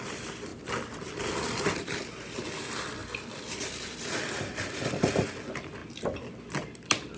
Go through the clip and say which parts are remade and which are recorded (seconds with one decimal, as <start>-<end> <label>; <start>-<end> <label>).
0.0-0.5 recorded; 0.5-2.4 remade; 2.4-3.0 recorded; 3.0-5.0 remade; 5.0-7.2 recorded